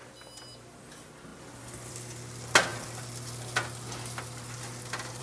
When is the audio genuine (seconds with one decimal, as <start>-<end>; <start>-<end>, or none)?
0.0-5.2